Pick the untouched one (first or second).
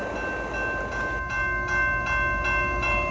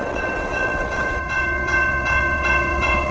first